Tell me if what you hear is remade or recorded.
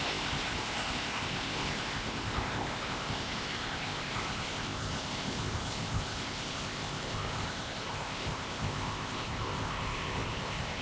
remade